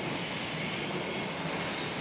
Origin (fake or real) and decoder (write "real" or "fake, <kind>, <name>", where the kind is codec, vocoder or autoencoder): real